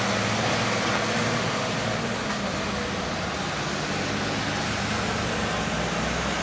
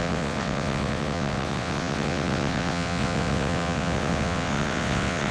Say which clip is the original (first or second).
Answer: first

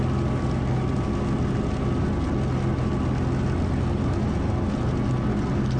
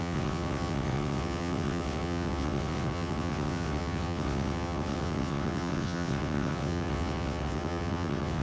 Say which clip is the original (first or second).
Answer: first